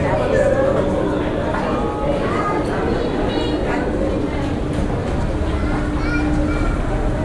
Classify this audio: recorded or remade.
recorded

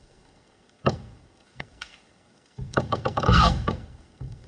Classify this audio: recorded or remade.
remade